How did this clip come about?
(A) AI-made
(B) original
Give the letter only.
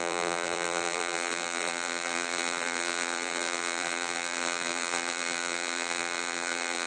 A